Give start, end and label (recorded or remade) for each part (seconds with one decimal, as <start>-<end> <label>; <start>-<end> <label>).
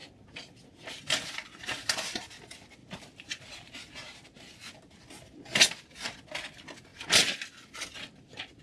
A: 0.0-2.8 recorded; 2.8-4.7 remade; 4.7-8.6 recorded